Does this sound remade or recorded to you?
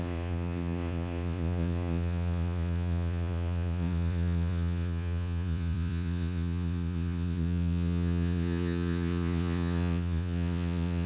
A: remade